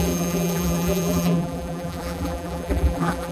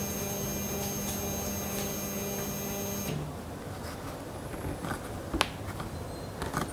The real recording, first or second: second